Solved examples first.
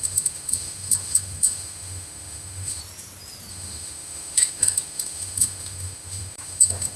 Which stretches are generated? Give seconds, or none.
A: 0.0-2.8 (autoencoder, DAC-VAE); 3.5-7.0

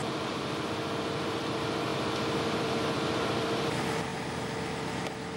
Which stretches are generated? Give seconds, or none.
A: 0.0-1.9 (vocoder, BigVGAN v2); 2.4-4.1; 4.9-5.4